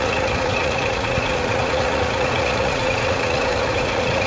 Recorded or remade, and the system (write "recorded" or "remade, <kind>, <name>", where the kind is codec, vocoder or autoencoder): remade, vocoder, Vocos